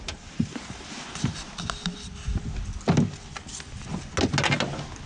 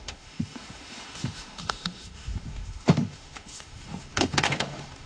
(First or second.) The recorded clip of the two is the first